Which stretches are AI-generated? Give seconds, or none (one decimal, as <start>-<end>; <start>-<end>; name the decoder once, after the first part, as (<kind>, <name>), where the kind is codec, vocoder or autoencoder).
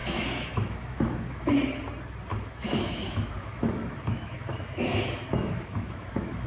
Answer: 0.0-1.5 (autoencoder, DAC-VAE); 2.3-6.5